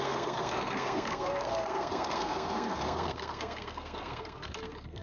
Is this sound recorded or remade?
remade